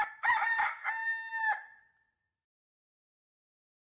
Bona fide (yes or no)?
yes